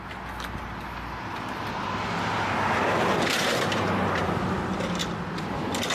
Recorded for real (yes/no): yes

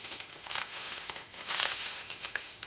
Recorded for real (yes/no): no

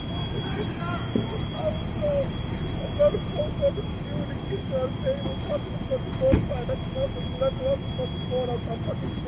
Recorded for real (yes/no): yes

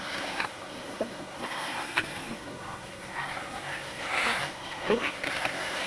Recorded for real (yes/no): no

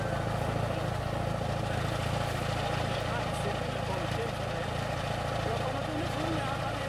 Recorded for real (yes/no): yes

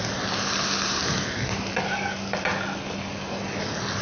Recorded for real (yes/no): yes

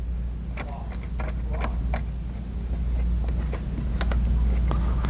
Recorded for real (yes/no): yes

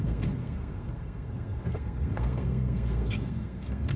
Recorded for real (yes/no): no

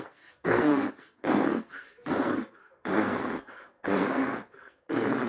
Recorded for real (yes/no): no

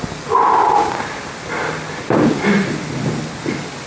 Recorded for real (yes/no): yes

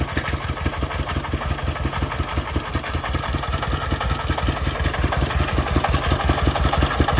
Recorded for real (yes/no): yes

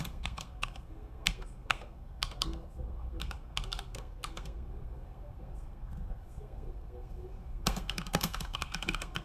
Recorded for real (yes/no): no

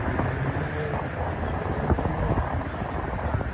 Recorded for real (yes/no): yes